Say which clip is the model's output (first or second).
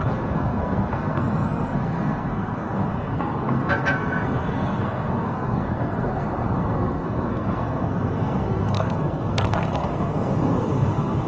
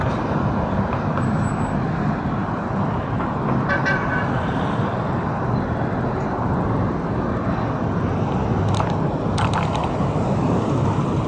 first